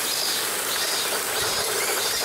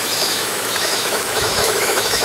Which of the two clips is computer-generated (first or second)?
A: second